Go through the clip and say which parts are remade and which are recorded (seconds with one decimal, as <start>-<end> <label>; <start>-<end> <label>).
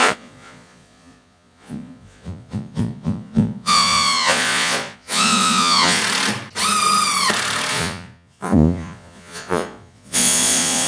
0.0-6.0 remade; 6.0-7.7 recorded; 7.7-10.9 remade